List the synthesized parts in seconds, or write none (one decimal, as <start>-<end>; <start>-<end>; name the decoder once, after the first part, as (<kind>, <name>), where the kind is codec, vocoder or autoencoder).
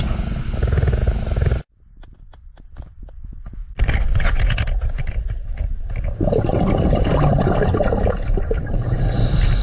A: none